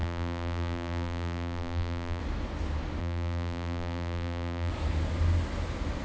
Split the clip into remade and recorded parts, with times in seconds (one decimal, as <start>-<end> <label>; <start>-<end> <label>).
0.0-2.2 remade; 2.2-3.0 recorded; 3.0-4.7 remade; 4.7-6.0 recorded